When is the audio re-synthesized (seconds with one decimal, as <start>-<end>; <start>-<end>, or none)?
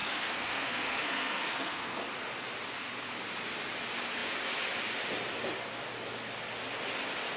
0.0-2.0